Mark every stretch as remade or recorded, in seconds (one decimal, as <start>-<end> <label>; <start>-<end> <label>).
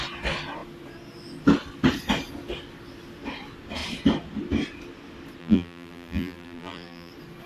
0.0-5.4 recorded; 5.4-7.1 remade; 7.1-7.5 recorded